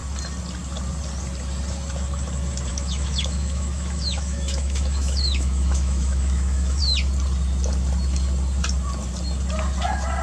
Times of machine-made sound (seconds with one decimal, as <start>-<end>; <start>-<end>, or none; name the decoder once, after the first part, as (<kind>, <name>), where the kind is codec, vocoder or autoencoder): 2.7-6.8 (autoencoder, DAC-VAE)